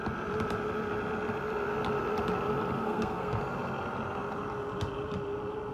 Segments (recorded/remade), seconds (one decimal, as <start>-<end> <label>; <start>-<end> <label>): 0.0-2.8 recorded; 2.8-3.4 remade; 3.4-5.7 recorded